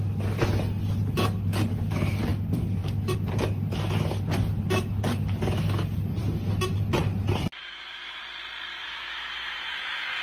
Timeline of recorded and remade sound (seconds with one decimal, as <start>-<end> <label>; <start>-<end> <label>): 0.0-7.6 recorded; 7.6-8.2 remade; 8.2-8.8 recorded; 8.8-10.2 remade